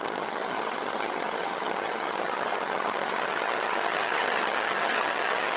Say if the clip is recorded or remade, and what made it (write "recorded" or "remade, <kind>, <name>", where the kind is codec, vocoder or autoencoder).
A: remade, vocoder, HiFi-GAN